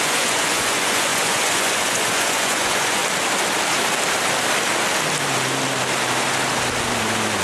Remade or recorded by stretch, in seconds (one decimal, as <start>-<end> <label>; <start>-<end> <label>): 0.0-3.0 remade; 3.0-7.4 recorded

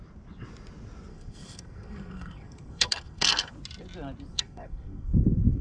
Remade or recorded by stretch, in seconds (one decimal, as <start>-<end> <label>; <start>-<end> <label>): 0.0-1.1 recorded; 1.1-3.5 remade; 3.5-4.3 recorded; 4.3-5.6 remade

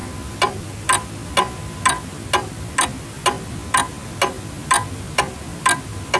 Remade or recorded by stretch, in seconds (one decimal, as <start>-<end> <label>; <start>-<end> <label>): 0.0-6.2 recorded

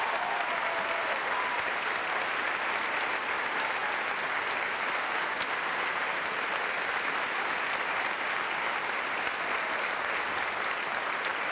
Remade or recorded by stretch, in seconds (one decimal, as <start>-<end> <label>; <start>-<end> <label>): 0.0-11.5 recorded

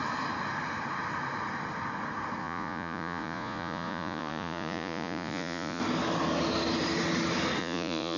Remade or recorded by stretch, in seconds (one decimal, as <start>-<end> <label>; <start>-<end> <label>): 0.0-2.4 recorded; 2.4-5.8 remade; 5.8-7.6 recorded; 7.6-8.2 remade